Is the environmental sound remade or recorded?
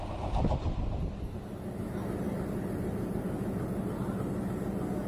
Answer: recorded